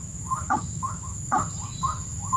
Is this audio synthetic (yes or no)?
yes